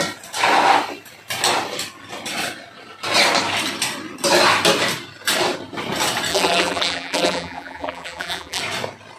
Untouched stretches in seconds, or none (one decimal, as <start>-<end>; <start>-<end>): 0.0-6.3; 8.6-9.2